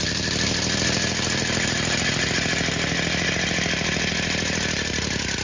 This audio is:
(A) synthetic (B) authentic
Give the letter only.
B